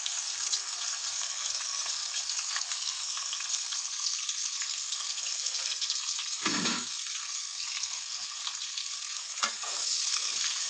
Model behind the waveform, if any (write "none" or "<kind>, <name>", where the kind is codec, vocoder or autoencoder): codec, SNAC